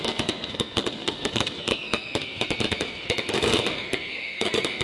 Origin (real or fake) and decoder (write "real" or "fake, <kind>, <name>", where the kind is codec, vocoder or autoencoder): fake, codec, SNAC